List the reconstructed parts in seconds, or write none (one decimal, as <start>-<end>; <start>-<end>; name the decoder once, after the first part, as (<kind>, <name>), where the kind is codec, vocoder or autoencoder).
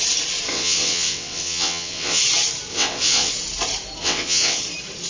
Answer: 0.5-2.2 (vocoder, WaveNeXt); 2.7-3.3; 4.0-4.6